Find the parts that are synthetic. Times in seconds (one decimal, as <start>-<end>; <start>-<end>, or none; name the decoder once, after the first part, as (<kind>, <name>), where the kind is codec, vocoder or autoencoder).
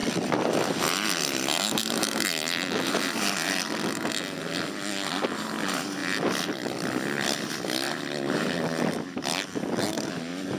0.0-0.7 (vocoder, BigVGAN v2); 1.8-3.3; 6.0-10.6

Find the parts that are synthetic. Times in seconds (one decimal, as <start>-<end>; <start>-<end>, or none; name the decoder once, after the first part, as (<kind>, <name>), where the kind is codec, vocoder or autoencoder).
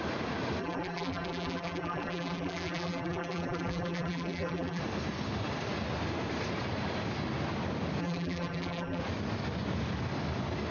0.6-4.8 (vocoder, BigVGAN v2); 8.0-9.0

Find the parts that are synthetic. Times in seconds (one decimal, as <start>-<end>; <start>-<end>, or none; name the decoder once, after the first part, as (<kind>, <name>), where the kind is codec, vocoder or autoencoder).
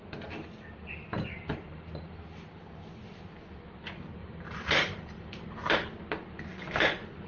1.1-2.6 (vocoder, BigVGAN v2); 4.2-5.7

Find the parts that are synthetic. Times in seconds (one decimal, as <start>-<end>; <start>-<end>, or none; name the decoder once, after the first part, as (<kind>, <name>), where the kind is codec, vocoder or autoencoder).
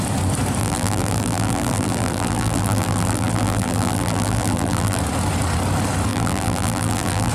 0.6-5.0 (vocoder, BigVGAN v2); 6.1-7.3